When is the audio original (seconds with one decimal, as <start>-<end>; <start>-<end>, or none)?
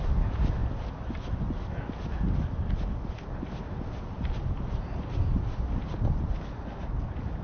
0.0-7.4